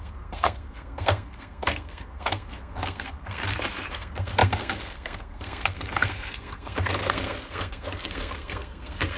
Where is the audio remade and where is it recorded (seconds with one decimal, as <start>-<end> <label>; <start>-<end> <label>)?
0.0-3.4 remade; 3.4-3.9 recorded; 3.9-9.2 remade